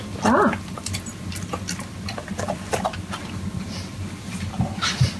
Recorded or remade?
recorded